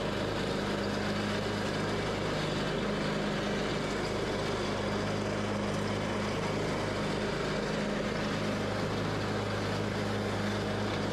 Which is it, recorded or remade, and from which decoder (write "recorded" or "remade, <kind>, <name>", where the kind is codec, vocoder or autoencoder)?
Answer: recorded